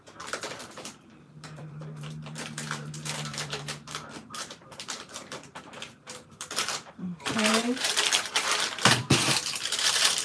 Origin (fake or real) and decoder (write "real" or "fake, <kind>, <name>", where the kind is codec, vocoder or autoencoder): fake, vocoder, BigVGAN v2